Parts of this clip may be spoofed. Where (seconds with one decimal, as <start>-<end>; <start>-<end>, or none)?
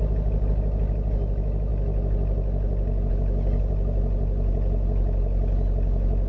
none